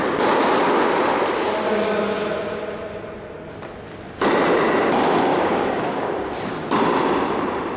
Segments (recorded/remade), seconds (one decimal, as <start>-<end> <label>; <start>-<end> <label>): 0.0-5.3 recorded; 5.3-6.1 remade; 6.1-7.8 recorded